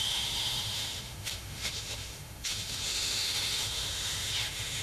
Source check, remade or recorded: remade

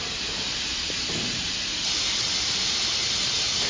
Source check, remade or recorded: recorded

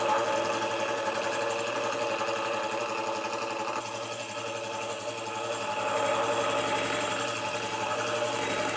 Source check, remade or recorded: recorded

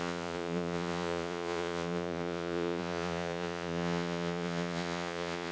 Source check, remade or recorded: remade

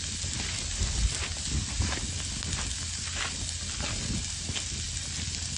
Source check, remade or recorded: recorded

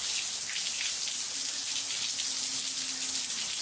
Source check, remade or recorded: recorded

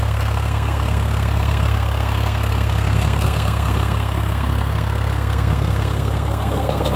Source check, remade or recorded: remade